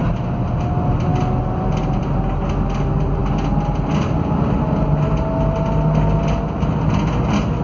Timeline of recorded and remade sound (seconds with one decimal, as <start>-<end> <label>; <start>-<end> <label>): 0.0-7.6 recorded